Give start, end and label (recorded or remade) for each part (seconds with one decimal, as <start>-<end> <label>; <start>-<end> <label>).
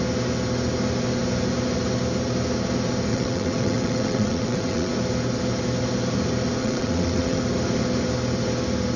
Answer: 0.0-3.1 recorded; 3.1-4.9 remade; 4.9-6.6 recorded; 6.6-7.4 remade; 7.4-9.0 recorded